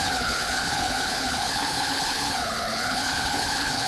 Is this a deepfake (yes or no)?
yes